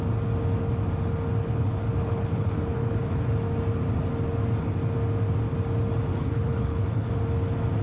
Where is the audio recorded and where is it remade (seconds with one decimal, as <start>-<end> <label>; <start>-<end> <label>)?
0.0-1.4 recorded; 1.4-3.3 remade; 3.3-6.1 recorded; 6.1-7.1 remade; 7.1-7.8 recorded